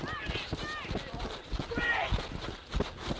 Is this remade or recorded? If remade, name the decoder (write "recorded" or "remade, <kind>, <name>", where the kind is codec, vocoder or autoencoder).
recorded